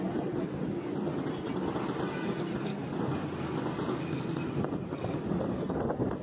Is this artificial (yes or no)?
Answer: no